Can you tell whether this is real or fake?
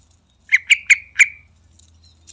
real